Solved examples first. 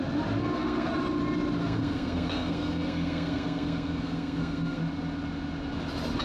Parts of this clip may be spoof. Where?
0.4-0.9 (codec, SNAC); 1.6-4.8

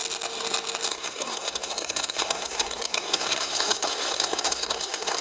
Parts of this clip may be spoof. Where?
0.9-5.2 (codec, SNAC)